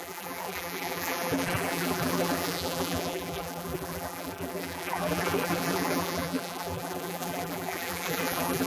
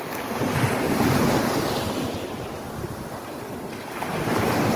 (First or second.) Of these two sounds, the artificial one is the first